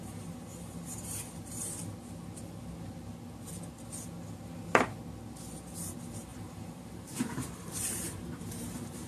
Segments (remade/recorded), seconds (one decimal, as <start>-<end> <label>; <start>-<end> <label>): 0.0-1.8 remade; 1.8-5.8 recorded; 5.8-9.1 remade

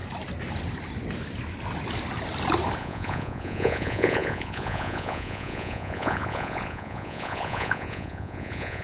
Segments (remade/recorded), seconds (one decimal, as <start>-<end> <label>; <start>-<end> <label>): 0.0-2.8 recorded; 2.8-8.8 remade

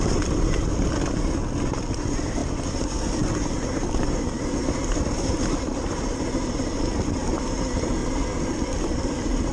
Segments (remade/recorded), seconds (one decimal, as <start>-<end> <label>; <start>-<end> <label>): 0.0-9.5 recorded

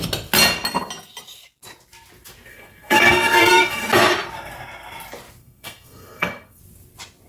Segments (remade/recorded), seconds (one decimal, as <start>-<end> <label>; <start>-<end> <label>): 0.0-2.5 recorded; 2.5-3.9 remade; 3.9-5.4 recorded; 5.4-6.6 remade; 6.6-7.3 recorded

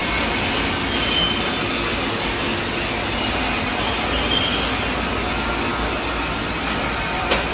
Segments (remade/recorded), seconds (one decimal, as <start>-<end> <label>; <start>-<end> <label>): 0.0-7.5 recorded

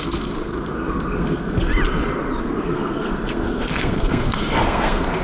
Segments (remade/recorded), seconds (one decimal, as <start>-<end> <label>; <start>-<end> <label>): 0.0-1.7 remade; 1.7-2.4 recorded; 2.4-5.2 remade